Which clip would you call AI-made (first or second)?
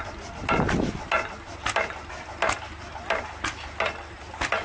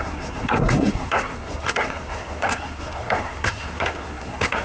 second